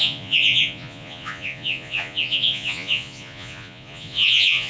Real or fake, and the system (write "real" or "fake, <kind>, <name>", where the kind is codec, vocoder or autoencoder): fake, vocoder, Vocos